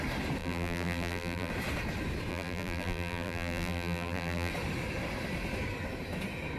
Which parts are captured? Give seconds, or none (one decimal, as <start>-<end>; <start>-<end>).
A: 0.0-0.4; 1.5-2.3; 4.5-6.6